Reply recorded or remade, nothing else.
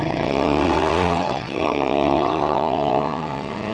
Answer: remade